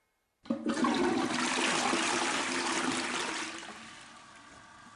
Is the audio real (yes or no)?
yes